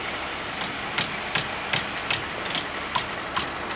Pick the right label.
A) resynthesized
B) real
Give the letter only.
B